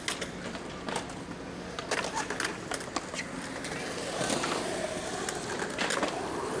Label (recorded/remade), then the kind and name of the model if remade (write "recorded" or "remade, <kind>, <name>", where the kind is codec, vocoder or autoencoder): recorded